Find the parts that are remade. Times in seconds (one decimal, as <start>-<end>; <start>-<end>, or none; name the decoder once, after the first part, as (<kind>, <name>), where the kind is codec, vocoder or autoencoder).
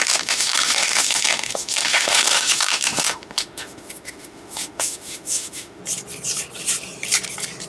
0.0-5.8 (autoencoder, DAC-VAE)